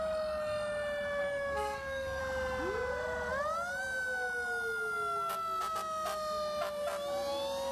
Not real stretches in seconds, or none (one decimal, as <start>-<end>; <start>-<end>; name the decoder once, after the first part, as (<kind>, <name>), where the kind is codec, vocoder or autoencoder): 1.2-2.2 (codec, SNAC)

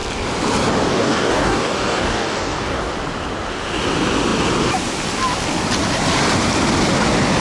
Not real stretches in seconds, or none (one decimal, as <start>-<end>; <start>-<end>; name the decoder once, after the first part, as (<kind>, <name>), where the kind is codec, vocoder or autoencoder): 0.9-2.9 (codec, DAC)

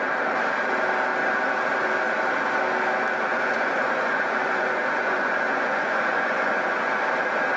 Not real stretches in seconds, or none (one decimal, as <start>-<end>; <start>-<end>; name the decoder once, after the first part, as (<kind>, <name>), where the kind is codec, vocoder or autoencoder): 3.3-7.0 (vocoder, Vocos)